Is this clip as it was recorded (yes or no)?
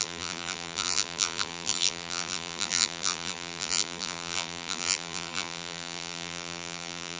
no